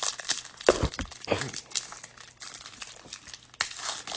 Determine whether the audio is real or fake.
real